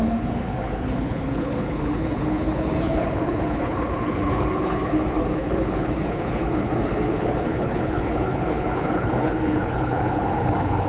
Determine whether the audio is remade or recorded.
remade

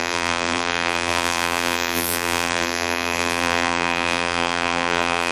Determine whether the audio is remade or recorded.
remade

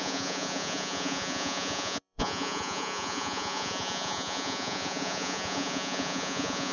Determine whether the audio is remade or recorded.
remade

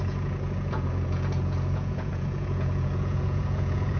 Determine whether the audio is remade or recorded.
remade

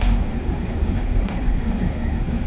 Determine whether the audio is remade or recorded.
remade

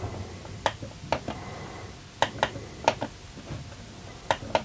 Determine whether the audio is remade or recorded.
recorded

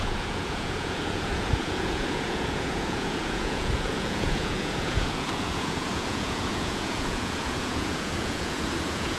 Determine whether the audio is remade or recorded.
remade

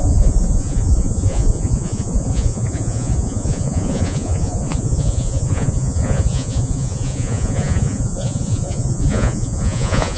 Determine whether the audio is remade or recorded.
remade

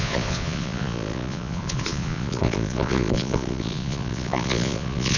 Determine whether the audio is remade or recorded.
remade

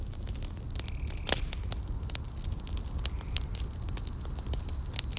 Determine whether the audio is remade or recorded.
recorded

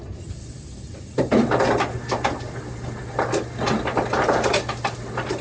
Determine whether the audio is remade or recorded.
recorded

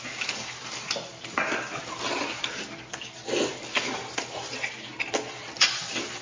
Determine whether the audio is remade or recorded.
recorded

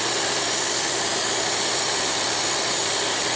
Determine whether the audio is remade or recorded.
recorded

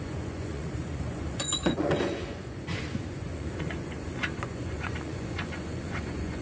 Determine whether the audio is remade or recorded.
remade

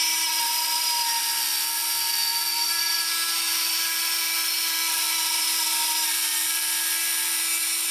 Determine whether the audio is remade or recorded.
remade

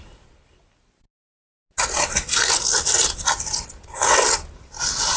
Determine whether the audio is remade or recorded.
recorded